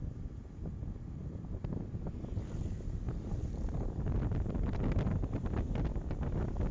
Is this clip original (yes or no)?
yes